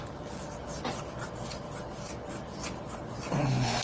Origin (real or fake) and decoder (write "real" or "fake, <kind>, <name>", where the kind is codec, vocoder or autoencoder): real